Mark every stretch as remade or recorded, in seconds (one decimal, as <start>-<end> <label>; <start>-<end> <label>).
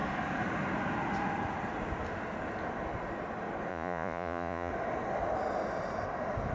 0.0-3.7 recorded; 3.7-4.7 remade; 4.7-6.5 recorded